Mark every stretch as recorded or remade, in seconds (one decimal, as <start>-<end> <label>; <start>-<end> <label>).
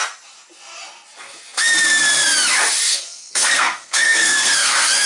0.0-2.9 recorded; 2.9-5.1 remade